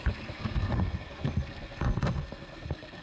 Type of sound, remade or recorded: remade